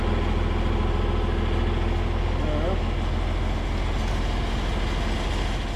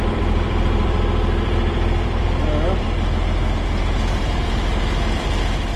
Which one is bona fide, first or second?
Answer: first